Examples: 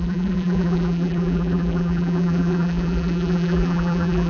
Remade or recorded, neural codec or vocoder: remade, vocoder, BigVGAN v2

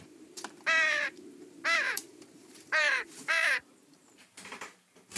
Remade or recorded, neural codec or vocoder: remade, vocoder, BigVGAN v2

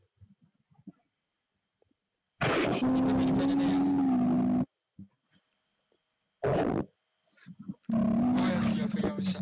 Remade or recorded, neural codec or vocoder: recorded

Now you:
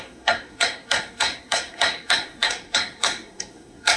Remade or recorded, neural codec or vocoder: remade, codec, SNAC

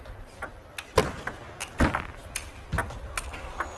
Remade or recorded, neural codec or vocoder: recorded